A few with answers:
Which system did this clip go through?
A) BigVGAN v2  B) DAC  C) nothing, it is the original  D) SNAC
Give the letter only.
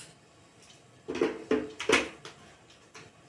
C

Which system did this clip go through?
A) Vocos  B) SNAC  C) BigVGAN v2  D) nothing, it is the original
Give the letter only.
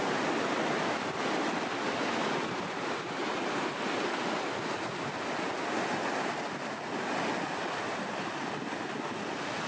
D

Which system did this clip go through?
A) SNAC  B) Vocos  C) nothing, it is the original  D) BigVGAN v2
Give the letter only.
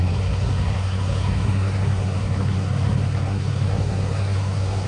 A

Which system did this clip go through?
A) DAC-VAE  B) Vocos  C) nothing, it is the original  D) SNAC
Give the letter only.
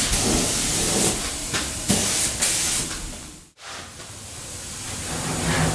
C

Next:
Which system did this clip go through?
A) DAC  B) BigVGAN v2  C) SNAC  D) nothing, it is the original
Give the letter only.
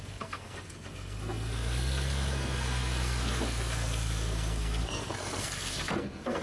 C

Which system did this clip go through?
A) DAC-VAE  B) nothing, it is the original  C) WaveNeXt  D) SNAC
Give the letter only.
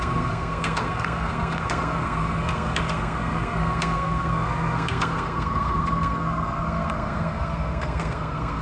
D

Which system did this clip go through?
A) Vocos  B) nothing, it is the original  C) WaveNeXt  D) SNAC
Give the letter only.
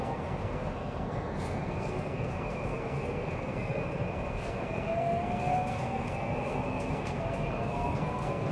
D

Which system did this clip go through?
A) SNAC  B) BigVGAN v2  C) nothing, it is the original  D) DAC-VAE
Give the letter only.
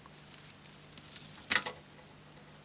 C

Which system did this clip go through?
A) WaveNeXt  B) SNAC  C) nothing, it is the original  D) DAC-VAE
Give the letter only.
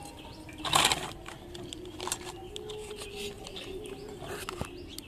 C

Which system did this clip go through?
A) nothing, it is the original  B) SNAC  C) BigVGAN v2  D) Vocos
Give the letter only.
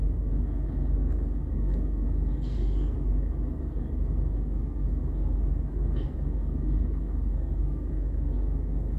B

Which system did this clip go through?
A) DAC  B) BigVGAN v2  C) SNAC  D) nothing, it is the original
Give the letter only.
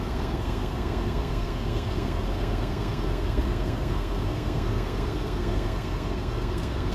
C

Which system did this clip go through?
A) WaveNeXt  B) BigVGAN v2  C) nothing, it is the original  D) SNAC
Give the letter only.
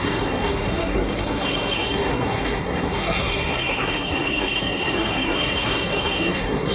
D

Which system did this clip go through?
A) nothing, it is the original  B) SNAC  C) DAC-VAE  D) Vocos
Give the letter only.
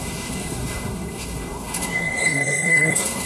B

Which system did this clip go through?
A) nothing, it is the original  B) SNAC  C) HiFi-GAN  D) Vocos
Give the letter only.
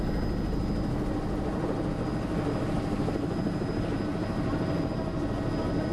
A